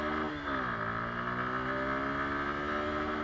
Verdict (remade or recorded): recorded